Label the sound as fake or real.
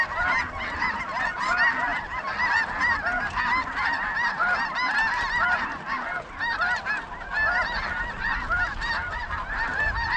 real